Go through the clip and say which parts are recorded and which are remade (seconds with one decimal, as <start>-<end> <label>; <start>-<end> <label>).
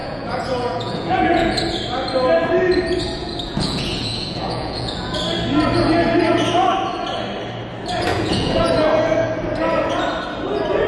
0.0-1.5 remade; 1.5-3.2 recorded; 3.2-5.2 remade; 5.2-8.1 recorded; 8.1-8.7 remade; 8.7-10.9 recorded